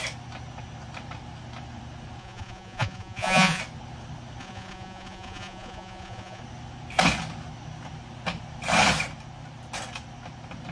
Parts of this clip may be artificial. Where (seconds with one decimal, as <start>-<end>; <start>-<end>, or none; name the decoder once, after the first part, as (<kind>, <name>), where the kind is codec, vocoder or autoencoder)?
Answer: 2.2-3.6 (vocoder, Vocos); 4.4-6.4